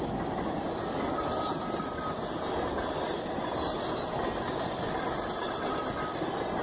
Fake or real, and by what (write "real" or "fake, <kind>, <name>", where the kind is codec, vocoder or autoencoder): real